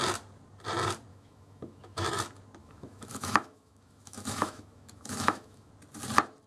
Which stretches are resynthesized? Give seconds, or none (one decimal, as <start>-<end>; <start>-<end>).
1.1-2.1; 2.6-5.7